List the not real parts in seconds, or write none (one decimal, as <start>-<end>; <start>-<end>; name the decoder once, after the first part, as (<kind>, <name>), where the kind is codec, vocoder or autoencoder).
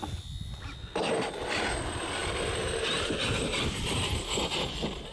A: none